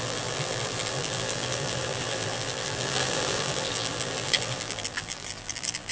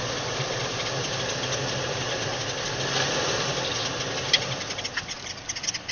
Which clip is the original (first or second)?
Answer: second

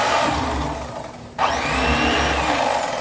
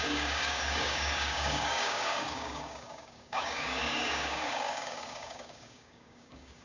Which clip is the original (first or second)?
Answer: first